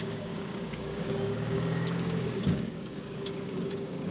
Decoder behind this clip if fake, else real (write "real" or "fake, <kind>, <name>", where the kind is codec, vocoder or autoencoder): fake, codec, DAC